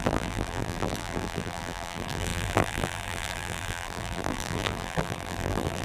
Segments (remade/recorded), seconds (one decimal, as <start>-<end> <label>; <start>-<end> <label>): 0.0-5.8 remade